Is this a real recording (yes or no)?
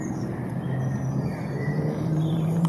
no